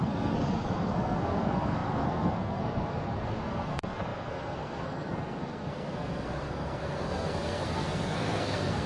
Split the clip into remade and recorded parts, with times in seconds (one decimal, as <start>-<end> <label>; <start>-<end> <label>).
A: 0.0-8.9 remade